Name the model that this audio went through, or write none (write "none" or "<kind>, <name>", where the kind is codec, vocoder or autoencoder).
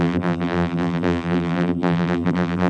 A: vocoder, BigVGAN v2